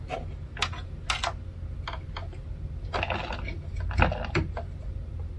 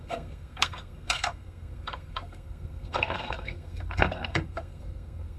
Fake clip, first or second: second